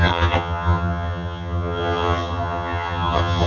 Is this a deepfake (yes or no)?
yes